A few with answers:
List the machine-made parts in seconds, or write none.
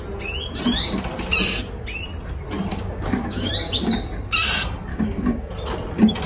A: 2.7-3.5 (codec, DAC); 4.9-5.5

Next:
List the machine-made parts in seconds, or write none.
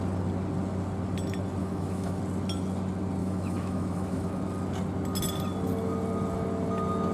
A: 1.6-2.2 (autoencoder, DAC-VAE); 3.2-4.4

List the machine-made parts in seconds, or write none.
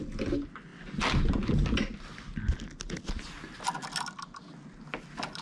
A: none